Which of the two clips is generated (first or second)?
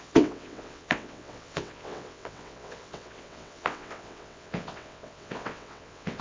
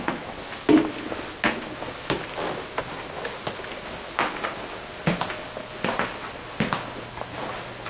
first